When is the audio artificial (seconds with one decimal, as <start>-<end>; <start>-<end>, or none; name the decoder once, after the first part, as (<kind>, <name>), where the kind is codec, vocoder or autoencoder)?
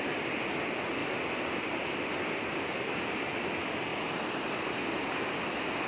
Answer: none